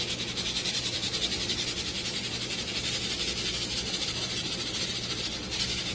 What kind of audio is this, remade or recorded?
recorded